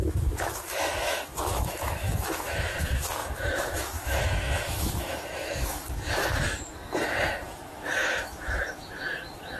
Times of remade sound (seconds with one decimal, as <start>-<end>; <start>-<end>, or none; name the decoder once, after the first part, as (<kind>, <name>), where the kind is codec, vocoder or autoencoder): 0.0-9.6 (autoencoder, DAC-VAE)